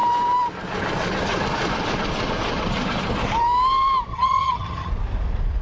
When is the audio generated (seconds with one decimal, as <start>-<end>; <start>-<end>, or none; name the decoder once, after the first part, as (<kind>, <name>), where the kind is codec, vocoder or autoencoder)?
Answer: 4.1-4.9 (vocoder, HiFi-GAN)